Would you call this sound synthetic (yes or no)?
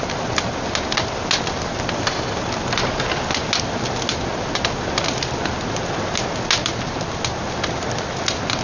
no